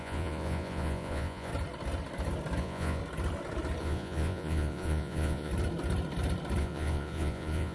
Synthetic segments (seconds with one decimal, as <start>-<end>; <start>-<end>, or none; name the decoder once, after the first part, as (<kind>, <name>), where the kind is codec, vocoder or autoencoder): 0.0-1.5 (vocoder, Vocos); 2.6-3.0; 3.8-5.5; 6.6-7.7